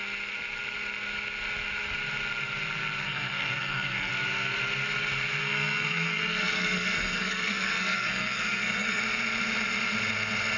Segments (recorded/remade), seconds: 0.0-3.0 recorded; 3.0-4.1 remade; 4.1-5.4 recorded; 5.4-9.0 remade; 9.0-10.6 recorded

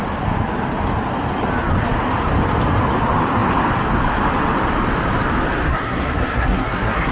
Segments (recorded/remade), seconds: 0.0-5.7 recorded; 5.7-7.1 remade

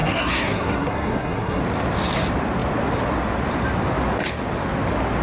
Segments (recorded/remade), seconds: 0.0-1.6 remade; 1.6-5.2 recorded